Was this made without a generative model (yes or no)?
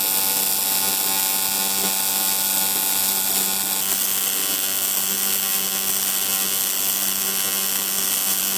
yes